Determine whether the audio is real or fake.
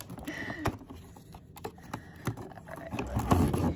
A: real